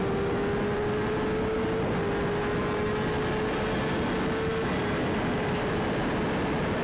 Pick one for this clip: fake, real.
real